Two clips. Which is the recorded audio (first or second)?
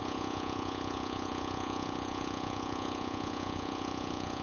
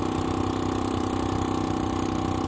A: second